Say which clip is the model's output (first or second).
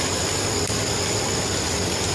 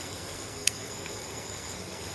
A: second